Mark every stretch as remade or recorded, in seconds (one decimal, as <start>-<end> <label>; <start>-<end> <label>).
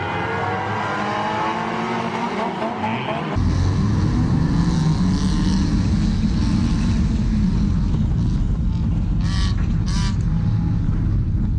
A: 0.0-11.6 recorded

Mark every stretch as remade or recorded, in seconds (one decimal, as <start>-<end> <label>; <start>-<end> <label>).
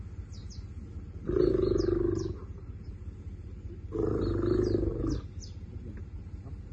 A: 0.0-6.7 recorded